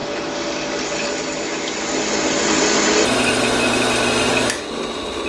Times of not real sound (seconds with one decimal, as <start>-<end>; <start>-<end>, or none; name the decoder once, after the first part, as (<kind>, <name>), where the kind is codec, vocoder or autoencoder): none